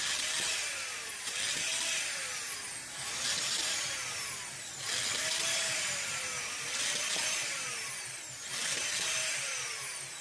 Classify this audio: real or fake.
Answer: real